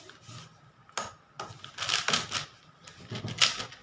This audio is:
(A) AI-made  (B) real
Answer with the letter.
B